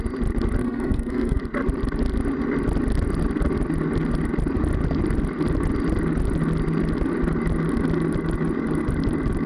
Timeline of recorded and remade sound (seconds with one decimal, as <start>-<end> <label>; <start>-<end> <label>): 0.0-0.6 recorded; 0.6-1.4 remade; 1.4-9.5 recorded